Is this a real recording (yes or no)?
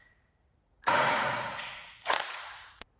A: no